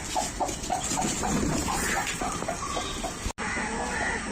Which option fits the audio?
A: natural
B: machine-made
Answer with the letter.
A